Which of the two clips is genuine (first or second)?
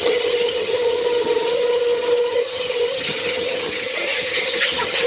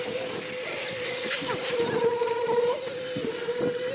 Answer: second